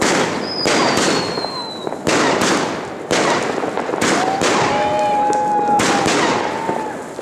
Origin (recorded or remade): recorded